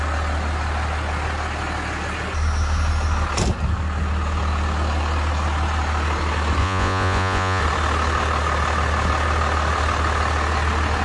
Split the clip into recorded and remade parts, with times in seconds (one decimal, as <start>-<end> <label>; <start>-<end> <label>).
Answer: 0.0-6.6 recorded; 6.6-7.6 remade; 7.6-11.0 recorded